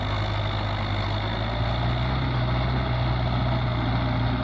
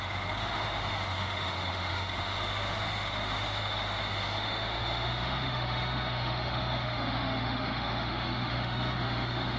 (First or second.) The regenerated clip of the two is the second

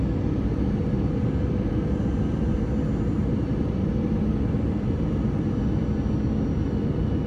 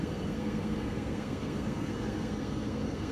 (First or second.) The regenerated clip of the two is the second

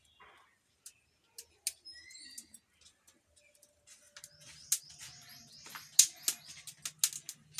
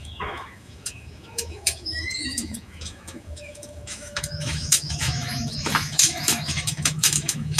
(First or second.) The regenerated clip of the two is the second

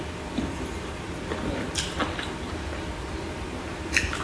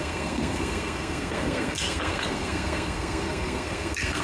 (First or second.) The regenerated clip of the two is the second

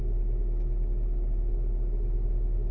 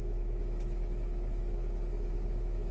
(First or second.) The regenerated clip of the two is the second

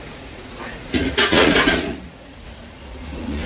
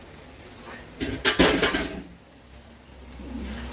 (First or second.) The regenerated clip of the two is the first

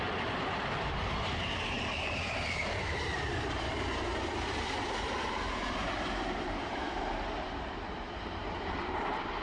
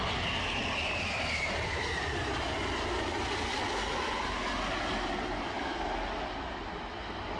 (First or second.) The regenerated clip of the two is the first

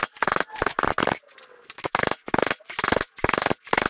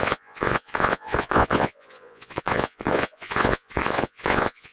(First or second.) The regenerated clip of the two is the second